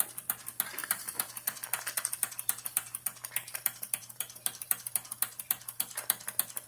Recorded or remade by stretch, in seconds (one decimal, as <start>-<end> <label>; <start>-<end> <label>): 0.0-3.4 recorded; 3.4-4.9 remade; 4.9-6.7 recorded